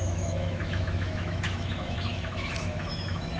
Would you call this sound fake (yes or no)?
yes